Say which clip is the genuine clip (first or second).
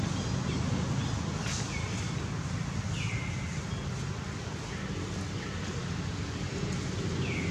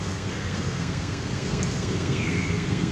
first